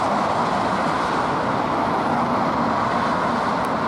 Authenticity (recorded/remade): recorded